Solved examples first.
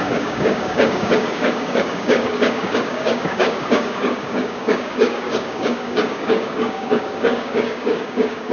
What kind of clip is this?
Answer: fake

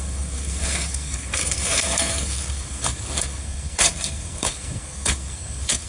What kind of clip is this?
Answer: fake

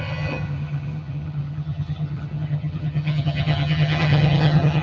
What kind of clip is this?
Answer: fake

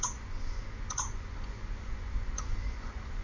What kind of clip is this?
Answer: fake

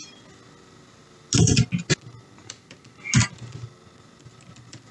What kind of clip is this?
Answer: real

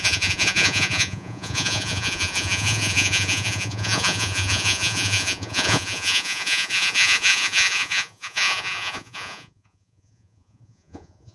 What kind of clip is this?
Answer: fake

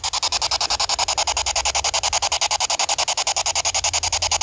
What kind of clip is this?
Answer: real